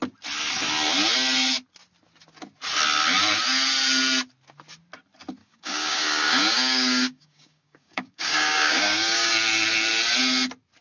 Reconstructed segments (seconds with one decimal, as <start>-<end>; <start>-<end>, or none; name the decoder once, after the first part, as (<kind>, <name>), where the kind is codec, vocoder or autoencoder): 5.4-9.3 (codec, DAC)